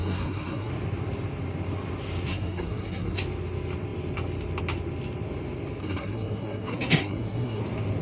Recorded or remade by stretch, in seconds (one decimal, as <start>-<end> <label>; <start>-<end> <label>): 0.0-0.7 remade; 0.7-2.3 recorded; 2.3-3.2 remade; 3.2-5.8 recorded; 5.8-7.6 remade; 7.6-8.0 recorded